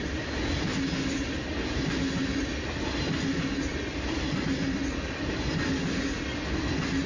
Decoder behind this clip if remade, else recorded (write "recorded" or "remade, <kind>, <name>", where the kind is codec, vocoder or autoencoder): recorded